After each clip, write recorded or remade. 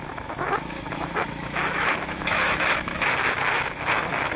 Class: remade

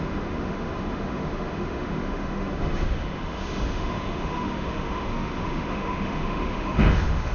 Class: remade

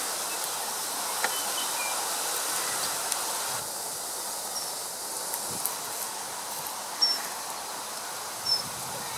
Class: recorded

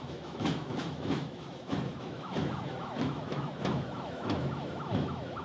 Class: remade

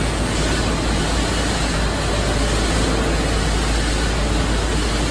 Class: recorded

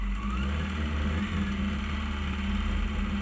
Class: recorded